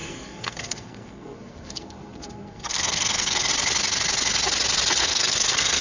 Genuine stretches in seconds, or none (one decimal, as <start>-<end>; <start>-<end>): 3.5-5.0